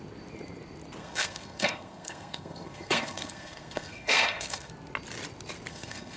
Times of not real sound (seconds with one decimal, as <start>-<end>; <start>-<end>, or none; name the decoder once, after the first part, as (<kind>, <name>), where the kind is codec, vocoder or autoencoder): 1.0-4.7 (codec, SNAC); 5.7-6.2

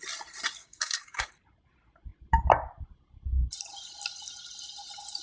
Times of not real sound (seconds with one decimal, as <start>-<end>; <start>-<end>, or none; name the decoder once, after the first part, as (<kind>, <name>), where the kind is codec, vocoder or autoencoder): 0.6-1.3 (codec, DAC)

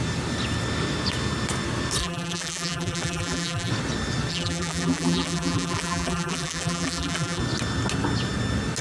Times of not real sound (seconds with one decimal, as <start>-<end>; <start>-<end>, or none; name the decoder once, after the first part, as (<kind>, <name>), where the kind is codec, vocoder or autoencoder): 2.0-3.7 (vocoder, BigVGAN v2); 4.3-7.4

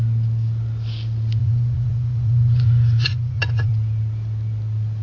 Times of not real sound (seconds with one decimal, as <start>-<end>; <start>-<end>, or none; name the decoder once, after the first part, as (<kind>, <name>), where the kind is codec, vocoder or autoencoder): 1.4-3.7 (vocoder, Vocos)

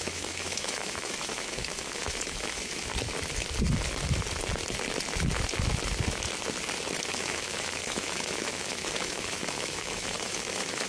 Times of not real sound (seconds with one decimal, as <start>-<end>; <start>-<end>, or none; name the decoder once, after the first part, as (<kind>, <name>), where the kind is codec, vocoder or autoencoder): 0.0-2.9 (autoencoder, DAC-VAE); 7.1-10.9

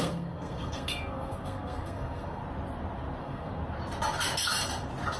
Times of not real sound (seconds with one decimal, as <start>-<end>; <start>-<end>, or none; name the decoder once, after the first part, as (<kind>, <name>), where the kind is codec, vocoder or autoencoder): 0.0-2.4 (codec, SNAC); 3.2-3.6

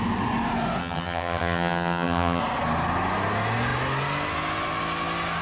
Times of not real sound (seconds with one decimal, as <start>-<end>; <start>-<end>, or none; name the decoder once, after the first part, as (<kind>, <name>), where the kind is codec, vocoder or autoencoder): 0.8-2.4 (vocoder, HiFi-GAN)

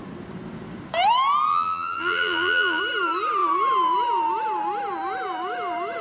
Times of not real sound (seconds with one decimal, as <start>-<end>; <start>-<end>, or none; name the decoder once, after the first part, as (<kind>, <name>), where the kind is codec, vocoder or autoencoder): 1.5-2.8 (vocoder, BigVGAN v2)